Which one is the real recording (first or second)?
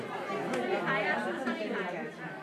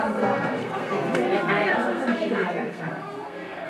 first